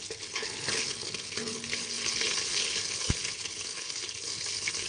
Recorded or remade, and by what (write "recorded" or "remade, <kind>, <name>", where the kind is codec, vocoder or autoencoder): remade, codec, HILCodec